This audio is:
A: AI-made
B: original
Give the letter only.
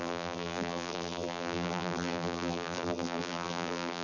A